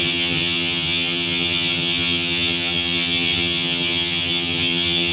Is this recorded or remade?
remade